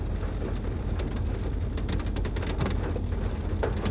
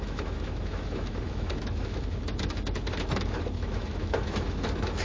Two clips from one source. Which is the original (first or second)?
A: first